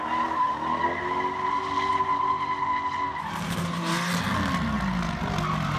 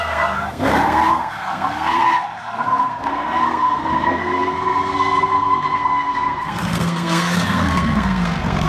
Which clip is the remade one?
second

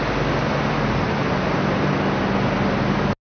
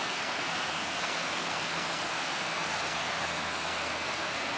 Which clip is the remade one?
second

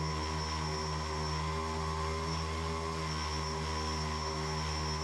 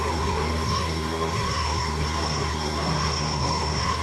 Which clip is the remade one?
second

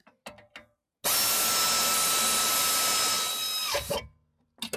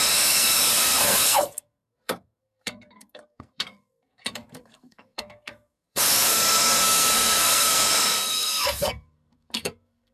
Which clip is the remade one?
second